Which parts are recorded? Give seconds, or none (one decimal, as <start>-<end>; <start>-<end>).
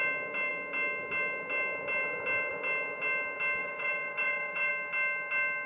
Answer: 0.0-3.6; 4.7-5.7